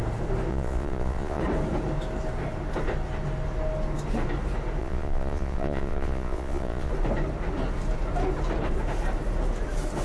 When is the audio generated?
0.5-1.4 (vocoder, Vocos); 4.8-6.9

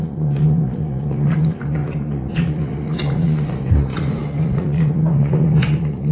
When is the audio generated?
0.0-6.1 (vocoder, Vocos)